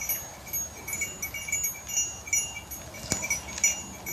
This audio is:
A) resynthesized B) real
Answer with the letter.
B